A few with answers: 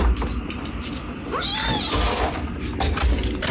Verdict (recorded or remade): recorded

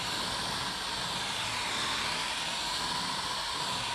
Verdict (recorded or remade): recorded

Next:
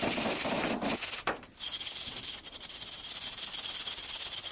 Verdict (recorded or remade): recorded